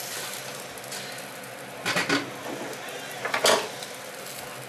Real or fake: real